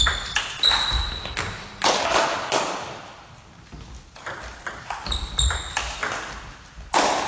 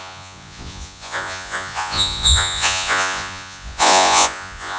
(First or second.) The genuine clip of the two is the first